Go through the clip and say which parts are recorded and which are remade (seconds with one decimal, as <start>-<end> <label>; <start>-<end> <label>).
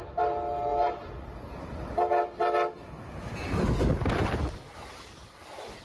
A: 0.0-5.8 recorded